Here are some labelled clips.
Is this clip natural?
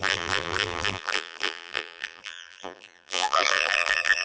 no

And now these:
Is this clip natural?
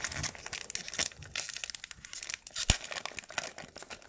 yes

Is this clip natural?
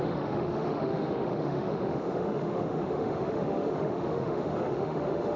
no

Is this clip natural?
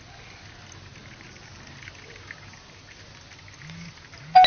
yes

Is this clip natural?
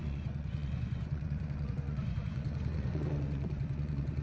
no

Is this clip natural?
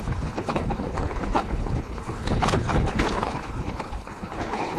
no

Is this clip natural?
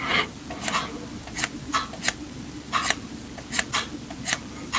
yes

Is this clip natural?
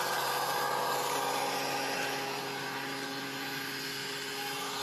yes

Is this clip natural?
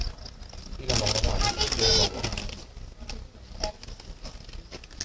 yes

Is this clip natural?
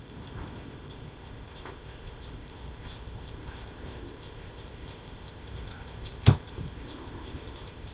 no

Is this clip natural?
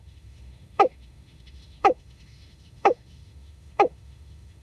no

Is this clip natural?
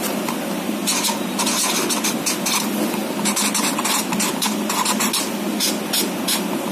yes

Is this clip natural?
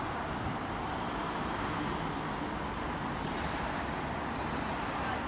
yes